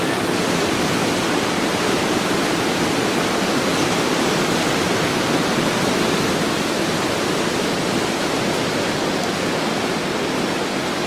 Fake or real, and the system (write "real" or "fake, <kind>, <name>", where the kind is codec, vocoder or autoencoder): real